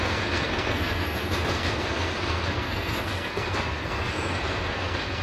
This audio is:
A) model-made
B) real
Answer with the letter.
A